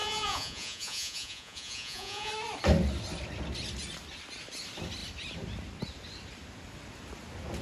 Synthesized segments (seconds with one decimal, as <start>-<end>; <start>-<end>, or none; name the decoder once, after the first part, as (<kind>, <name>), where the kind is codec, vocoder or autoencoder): 0.0-2.3 (vocoder, Vocos)